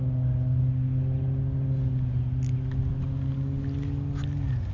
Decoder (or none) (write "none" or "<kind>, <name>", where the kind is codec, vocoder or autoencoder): none